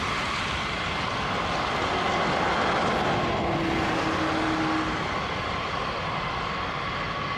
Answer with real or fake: real